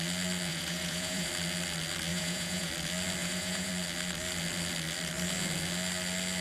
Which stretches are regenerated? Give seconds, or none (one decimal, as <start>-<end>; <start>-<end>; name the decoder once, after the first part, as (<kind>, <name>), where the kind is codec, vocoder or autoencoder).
0.5-1.3 (vocoder, Vocos); 2.1-2.7; 3.2-3.7